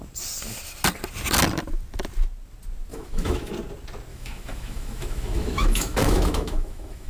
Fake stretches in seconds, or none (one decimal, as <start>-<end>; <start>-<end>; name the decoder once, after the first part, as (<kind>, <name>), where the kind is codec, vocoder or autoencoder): 2.9-3.5 (autoencoder, DAC-VAE); 4.1-7.1